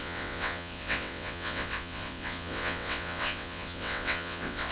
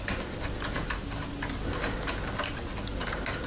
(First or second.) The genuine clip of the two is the second